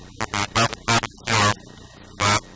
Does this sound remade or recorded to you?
recorded